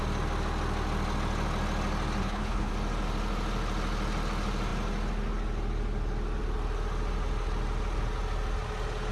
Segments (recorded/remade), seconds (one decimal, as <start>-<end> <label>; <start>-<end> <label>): 0.0-2.2 recorded; 2.2-2.7 remade; 2.7-9.1 recorded

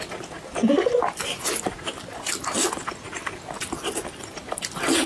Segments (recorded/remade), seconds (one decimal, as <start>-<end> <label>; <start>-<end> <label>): 0.0-5.1 recorded

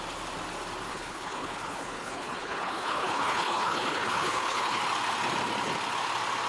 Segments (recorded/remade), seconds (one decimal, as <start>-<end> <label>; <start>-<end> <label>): 0.0-0.9 recorded; 0.9-4.8 remade; 4.8-6.5 recorded

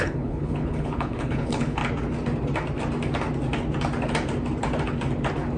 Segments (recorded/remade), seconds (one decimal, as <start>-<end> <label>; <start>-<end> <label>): 0.0-1.8 remade; 1.8-5.6 recorded

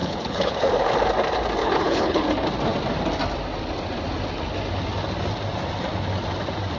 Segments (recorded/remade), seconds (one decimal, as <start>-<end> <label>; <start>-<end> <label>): 0.0-0.7 remade; 0.7-1.6 recorded; 1.6-2.2 remade; 2.2-6.8 recorded

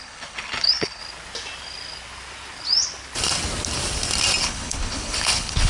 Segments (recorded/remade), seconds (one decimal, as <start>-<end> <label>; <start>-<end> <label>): 0.0-1.0 remade; 1.0-4.4 recorded; 4.4-5.7 remade